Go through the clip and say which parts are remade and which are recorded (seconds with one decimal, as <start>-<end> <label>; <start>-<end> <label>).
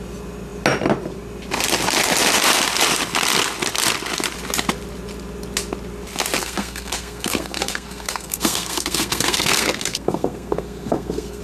0.0-6.4 recorded; 6.4-11.4 remade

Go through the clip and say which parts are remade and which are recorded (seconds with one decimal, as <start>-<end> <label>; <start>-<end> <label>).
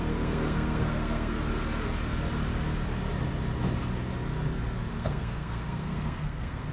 0.0-1.5 remade; 1.5-4.9 recorded; 4.9-6.7 remade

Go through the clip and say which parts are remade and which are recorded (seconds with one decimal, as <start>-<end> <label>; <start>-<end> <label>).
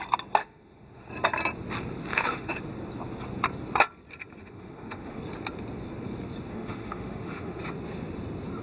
0.0-0.4 recorded; 0.4-1.1 remade; 1.1-2.1 recorded; 2.1-2.6 remade; 2.6-4.4 recorded; 4.4-5.2 remade; 5.2-6.5 recorded; 6.5-7.6 remade; 7.6-8.6 recorded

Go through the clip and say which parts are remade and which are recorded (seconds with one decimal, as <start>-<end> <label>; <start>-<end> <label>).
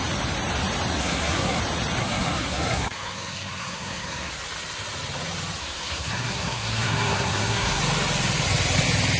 0.0-1.0 recorded; 1.0-1.6 remade; 1.6-2.0 recorded; 2.0-4.3 remade; 4.3-5.6 recorded; 5.6-7.8 remade; 7.8-9.2 recorded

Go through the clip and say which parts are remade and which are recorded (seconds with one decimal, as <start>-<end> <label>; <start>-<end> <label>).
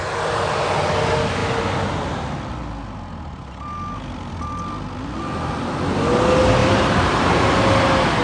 0.0-6.6 recorded; 6.6-7.3 remade; 7.3-8.2 recorded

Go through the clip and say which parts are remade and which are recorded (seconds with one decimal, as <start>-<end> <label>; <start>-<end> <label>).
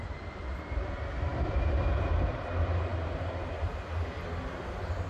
0.0-1.3 recorded; 1.3-2.5 remade; 2.5-5.1 recorded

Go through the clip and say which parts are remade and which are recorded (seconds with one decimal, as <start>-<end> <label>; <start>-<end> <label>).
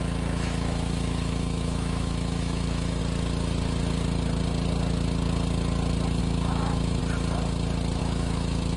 0.0-3.0 remade; 3.0-6.2 recorded; 6.2-7.0 remade; 7.0-8.0 recorded; 8.0-8.8 remade